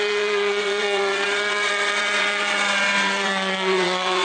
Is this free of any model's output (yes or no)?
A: no